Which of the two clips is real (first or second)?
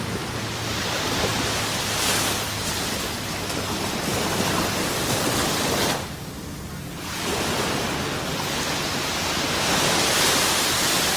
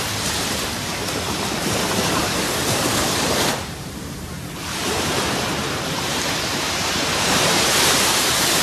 first